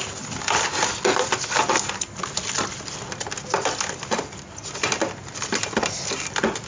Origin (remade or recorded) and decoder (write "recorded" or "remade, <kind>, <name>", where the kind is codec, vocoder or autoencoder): recorded